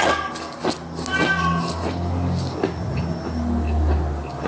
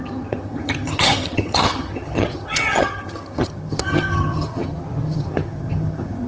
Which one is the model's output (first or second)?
second